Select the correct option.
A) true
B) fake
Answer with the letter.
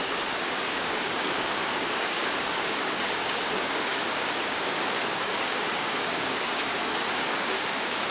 B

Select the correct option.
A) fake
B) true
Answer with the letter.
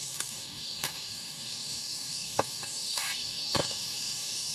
A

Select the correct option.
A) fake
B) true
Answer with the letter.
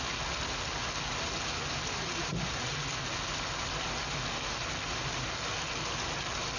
B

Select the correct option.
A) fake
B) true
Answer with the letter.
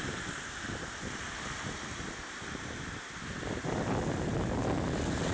B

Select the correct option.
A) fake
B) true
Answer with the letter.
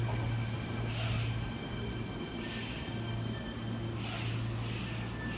B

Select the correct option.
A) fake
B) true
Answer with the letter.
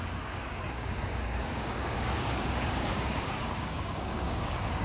A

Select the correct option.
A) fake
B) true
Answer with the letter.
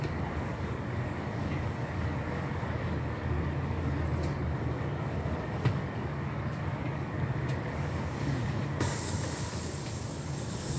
A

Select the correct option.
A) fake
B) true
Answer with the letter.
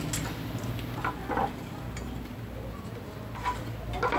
B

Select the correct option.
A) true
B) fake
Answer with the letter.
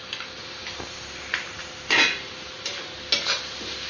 A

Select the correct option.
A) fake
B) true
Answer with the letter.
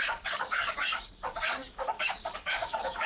A